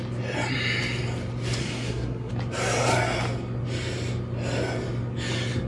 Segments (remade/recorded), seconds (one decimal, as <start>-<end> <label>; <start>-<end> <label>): 0.0-1.6 recorded; 1.6-2.3 remade; 2.3-5.7 recorded